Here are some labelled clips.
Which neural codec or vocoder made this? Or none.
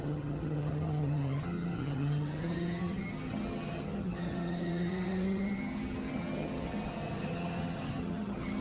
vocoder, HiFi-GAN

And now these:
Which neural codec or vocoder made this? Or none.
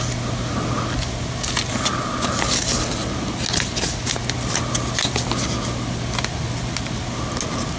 none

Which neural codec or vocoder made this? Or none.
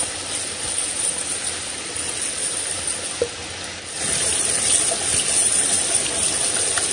vocoder, BigVGAN v2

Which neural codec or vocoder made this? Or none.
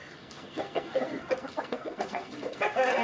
codec, SNAC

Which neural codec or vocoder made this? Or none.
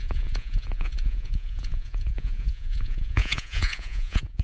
vocoder, Vocos